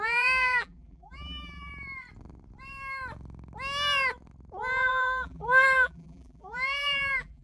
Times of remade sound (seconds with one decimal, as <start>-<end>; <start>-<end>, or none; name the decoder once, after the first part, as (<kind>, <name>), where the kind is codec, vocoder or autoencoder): 0.0-1.7 (vocoder, BigVGAN v2); 4.9-7.4